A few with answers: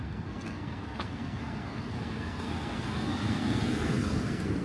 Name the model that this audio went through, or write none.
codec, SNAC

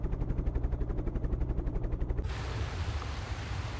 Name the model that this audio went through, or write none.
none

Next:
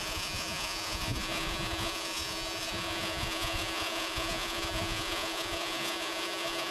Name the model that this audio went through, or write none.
vocoder, Vocos